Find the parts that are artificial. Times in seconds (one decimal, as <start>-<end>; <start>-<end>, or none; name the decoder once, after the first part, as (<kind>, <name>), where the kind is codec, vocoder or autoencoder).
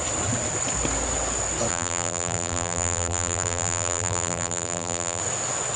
1.7-5.2 (vocoder, BigVGAN v2)